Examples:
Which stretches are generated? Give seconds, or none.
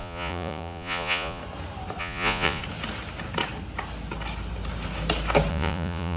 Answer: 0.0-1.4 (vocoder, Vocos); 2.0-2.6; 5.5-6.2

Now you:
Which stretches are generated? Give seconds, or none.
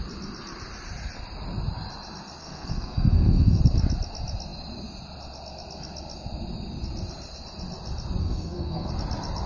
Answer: 2.4-3.6 (codec, SNAC); 8.2-8.9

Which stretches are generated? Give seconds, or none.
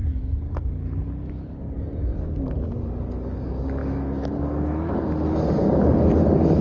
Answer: 3.8-4.9 (autoencoder, DAC-VAE)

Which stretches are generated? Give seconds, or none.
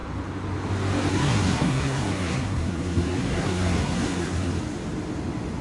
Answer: 1.1-4.5 (codec, SNAC)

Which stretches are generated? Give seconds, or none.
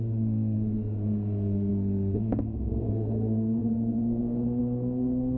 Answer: 0.0-5.4 (codec, SNAC)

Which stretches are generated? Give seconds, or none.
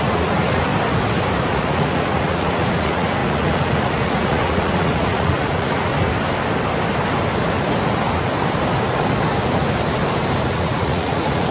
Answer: 0.0-0.7 (vocoder, Vocos); 1.5-5.9; 10.4-11.5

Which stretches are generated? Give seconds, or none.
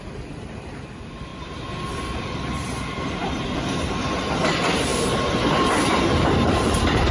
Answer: 0.0-1.3 (vocoder, BigVGAN v2); 2.4-7.1